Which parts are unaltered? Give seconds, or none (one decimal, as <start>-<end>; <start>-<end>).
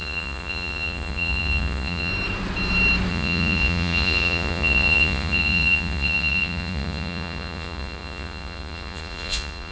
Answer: 2.1-3.1